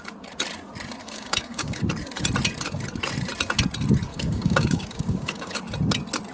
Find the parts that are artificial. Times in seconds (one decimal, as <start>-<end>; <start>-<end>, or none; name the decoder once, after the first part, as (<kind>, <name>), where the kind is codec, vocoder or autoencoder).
1.0-1.8 (codec, DAC); 4.1-5.6